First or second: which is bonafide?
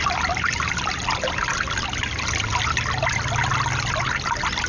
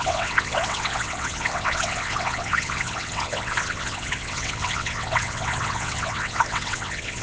first